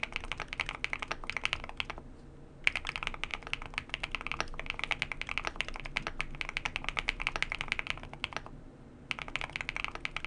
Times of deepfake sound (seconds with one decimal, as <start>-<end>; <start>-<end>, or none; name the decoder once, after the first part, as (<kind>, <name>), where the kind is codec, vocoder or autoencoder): none